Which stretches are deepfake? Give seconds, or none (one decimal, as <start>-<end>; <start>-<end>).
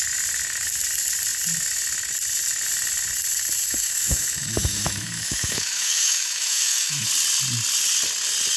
3.6-7.1